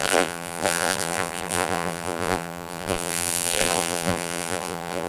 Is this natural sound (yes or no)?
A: no